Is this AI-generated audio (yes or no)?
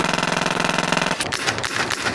yes